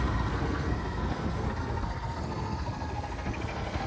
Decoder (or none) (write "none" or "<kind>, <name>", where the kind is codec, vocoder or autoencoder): codec, SNAC